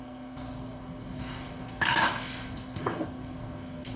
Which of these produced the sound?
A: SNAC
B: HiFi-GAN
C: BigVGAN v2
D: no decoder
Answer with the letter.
A